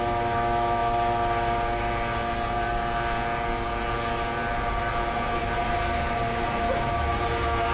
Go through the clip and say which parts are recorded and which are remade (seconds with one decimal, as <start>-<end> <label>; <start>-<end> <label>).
0.0-7.7 recorded